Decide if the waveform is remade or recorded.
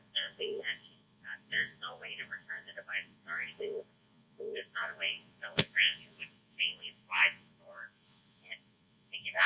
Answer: remade